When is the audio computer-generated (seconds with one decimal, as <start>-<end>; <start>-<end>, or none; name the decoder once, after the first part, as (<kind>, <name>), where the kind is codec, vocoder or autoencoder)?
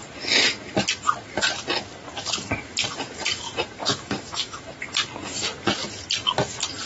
3.8-4.5 (autoencoder, DAC-VAE)